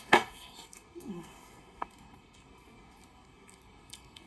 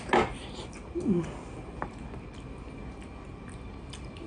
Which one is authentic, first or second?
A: second